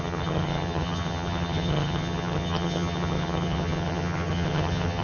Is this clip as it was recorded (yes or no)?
no